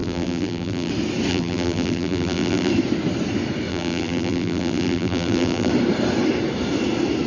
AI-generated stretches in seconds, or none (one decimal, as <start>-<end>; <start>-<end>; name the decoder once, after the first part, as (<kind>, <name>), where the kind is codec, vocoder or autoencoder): 0.0-0.9 (vocoder, BigVGAN v2); 1.3-2.7; 3.7-5.7